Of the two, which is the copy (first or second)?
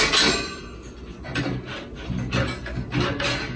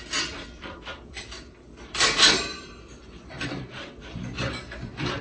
second